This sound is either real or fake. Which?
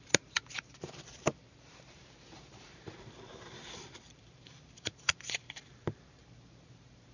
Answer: fake